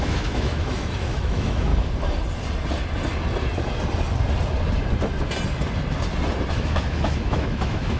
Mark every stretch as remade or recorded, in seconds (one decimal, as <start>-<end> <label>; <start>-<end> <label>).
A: 0.0-1.7 remade; 1.7-6.5 recorded; 6.5-8.0 remade